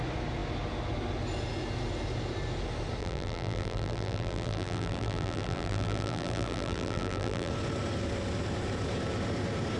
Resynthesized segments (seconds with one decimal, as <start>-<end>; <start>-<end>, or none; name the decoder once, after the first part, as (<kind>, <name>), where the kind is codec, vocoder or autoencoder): 3.0-7.5 (vocoder, BigVGAN v2)